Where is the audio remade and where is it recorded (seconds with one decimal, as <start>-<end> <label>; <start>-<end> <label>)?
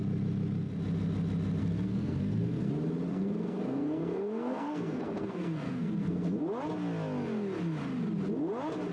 0.0-1.6 recorded; 1.6-2.7 remade; 2.7-3.1 recorded; 3.1-6.4 remade; 6.4-8.9 recorded